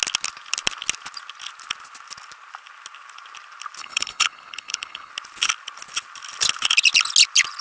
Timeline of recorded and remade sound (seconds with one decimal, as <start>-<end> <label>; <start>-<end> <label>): 0.0-3.8 recorded; 3.8-5.1 remade; 5.1-7.6 recorded

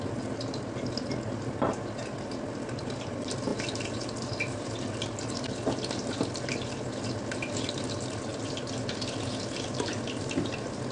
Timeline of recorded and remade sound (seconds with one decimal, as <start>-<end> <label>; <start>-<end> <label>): 0.0-10.9 recorded

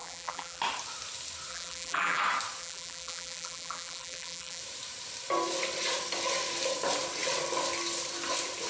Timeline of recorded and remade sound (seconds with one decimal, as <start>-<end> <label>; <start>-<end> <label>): 0.0-0.6 remade; 0.6-1.5 recorded; 1.5-2.2 remade; 2.2-2.6 recorded; 2.6-4.6 remade; 4.6-8.7 recorded

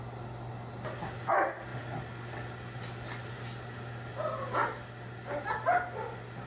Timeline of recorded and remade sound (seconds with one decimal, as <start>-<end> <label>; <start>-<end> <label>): 0.0-6.5 recorded